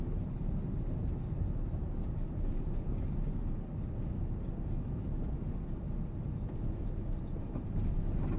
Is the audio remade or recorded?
recorded